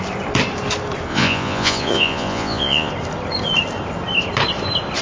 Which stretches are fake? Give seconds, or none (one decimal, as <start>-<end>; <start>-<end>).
1.1-2.9